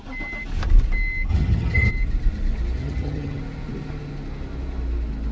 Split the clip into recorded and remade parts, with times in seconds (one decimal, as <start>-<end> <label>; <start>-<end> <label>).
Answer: 0.0-1.3 recorded; 1.3-1.9 remade; 1.9-2.8 recorded; 2.8-3.4 remade; 3.4-5.3 recorded